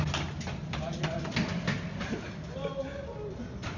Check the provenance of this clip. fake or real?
real